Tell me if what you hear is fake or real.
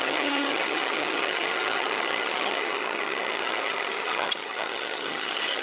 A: fake